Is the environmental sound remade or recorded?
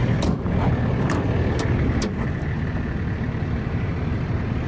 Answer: recorded